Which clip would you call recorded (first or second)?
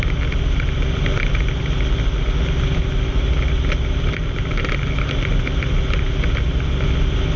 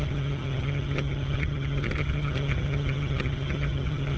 first